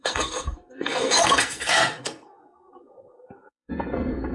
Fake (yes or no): yes